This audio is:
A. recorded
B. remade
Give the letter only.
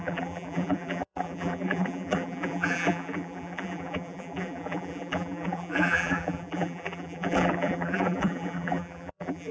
B